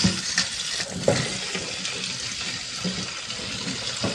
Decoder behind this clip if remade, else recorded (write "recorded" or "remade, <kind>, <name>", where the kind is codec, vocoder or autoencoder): recorded